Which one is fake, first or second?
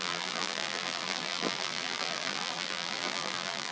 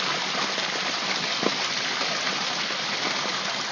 first